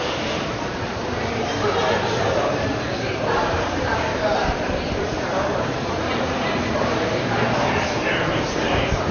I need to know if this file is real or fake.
fake